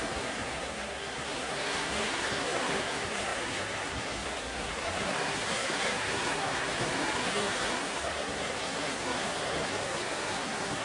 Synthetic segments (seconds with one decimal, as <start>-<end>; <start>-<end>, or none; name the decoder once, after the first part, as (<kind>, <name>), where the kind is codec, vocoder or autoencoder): 0.0-10.8 (codec, SNAC)